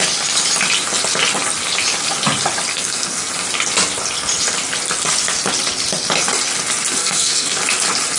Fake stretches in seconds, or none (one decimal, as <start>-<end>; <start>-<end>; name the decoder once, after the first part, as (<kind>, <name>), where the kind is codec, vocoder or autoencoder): 2.7-3.3 (codec, SNAC); 6.9-7.6